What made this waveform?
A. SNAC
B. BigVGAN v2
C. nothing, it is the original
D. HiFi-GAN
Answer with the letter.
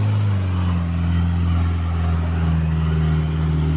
C